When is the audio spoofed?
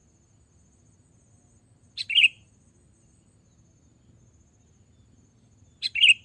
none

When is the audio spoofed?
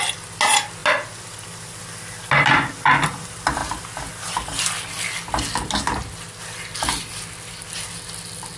none